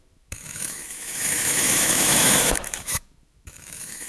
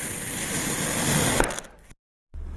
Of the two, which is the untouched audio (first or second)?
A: second